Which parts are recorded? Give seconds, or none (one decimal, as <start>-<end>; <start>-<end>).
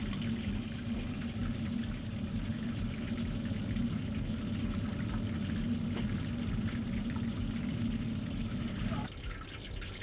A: 0.0-10.0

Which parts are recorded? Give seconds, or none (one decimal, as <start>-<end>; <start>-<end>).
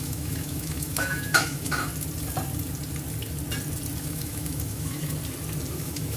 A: 1.9-4.0; 5.2-5.7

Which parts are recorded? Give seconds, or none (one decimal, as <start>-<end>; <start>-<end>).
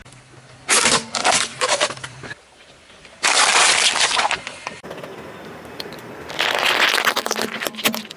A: 0.0-1.2; 6.0-8.2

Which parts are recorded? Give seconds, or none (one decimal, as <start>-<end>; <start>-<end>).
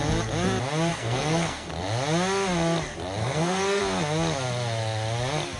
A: 0.0-0.9; 1.7-3.2; 3.8-5.6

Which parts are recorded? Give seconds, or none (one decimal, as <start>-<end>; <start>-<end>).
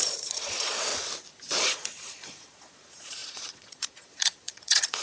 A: 0.9-1.5